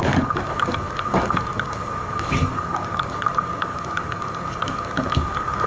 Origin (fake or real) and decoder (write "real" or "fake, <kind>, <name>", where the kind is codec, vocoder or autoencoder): fake, codec, DAC